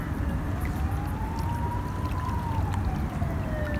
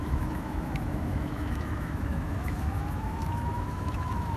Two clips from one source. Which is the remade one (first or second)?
second